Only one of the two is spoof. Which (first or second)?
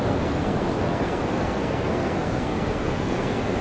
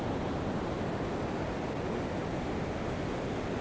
first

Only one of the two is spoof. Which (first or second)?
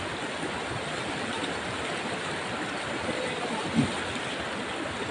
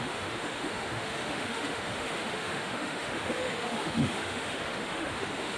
second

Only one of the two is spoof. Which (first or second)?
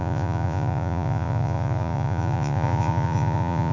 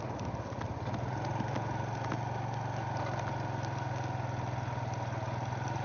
first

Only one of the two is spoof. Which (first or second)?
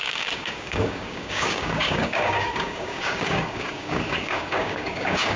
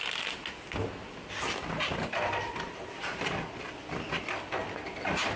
first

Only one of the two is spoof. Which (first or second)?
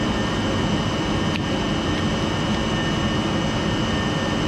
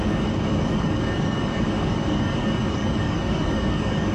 second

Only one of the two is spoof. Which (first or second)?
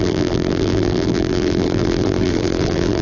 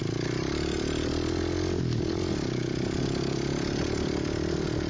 first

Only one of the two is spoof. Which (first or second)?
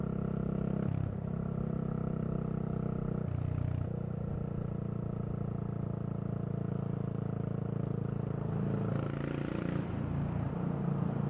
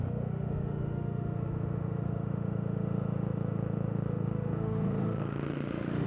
second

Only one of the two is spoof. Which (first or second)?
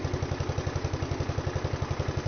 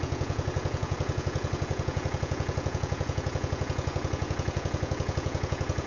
second